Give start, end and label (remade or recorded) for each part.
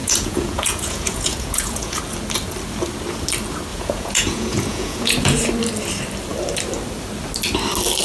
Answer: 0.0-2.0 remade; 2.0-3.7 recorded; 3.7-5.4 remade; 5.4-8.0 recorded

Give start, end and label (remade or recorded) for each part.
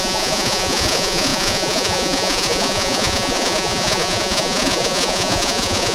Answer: 0.0-5.9 remade